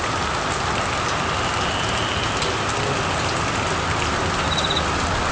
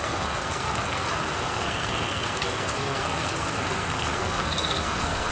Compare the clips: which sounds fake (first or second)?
second